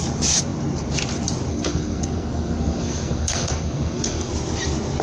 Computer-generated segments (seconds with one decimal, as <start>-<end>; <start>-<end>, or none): 1.5-4.3